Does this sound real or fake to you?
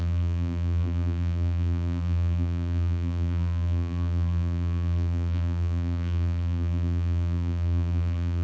fake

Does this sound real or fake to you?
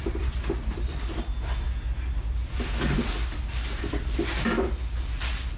real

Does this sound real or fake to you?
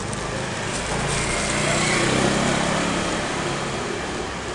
real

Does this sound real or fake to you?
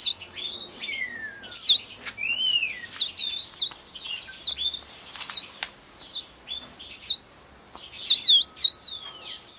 real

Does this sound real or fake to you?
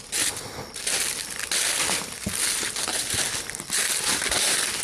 real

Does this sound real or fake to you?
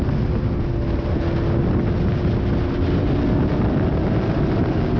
real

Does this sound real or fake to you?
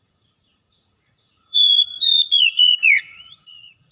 fake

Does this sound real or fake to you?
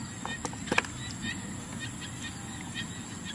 real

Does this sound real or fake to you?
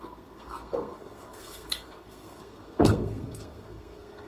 fake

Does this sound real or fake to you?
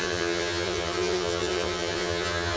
fake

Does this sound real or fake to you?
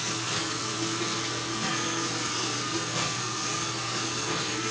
fake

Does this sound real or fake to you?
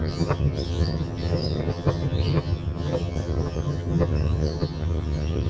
fake